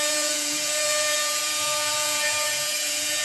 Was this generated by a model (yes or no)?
yes